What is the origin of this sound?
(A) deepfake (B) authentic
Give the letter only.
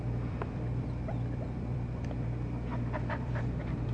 A